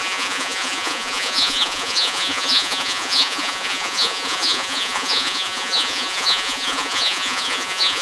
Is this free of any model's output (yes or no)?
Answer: no